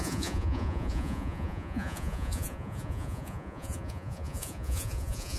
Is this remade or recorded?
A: remade